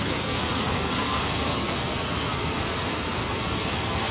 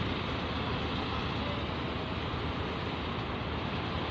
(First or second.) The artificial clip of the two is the first